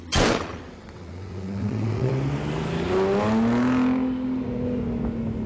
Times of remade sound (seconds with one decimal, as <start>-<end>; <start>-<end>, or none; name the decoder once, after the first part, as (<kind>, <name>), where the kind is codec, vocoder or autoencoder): 0.0-2.1 (vocoder, WaveNeXt)